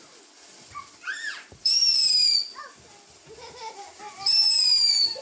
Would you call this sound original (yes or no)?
no